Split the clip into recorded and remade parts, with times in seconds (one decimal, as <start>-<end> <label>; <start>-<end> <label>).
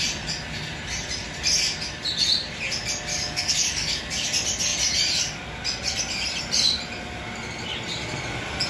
0.0-3.1 recorded; 3.1-4.0 remade; 4.0-8.7 recorded